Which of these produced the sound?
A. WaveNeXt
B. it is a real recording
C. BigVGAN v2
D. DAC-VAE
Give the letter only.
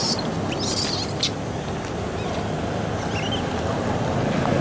B